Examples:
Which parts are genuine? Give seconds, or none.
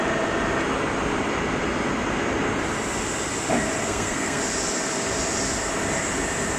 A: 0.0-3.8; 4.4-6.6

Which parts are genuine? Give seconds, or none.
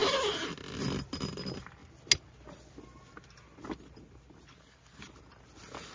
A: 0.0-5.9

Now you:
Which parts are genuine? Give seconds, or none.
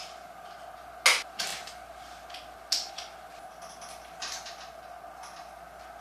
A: 0.0-6.0